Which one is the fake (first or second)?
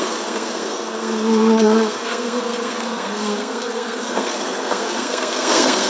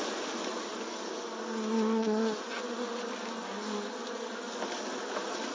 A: first